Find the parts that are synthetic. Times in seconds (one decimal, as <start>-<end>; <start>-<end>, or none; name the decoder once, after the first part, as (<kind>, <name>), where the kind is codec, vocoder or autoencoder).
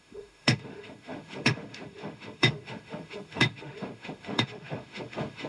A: 0.0-5.5 (autoencoder, DAC-VAE)